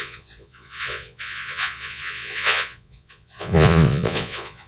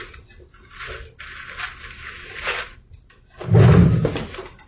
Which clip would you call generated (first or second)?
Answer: first